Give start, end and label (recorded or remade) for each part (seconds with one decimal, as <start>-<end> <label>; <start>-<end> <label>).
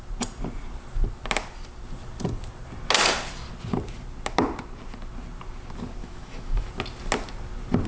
0.0-6.0 recorded; 6.0-6.7 remade; 6.7-7.9 recorded